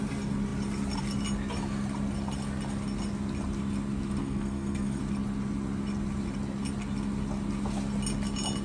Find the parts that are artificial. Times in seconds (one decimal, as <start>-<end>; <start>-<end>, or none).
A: 4.2-5.0